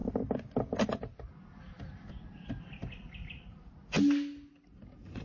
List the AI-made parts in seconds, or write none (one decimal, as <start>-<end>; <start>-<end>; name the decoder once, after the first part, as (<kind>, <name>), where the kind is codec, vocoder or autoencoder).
none

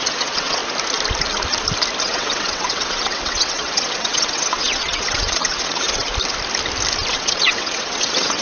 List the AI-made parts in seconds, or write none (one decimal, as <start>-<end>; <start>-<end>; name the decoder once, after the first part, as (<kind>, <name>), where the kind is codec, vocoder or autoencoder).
0.0-0.6 (vocoder, WaveNeXt); 2.0-6.1; 7.1-8.4

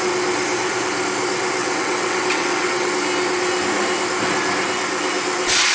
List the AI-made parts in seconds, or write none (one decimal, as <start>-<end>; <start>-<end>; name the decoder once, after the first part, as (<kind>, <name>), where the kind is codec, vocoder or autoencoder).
1.6-2.9 (vocoder, WaveNeXt)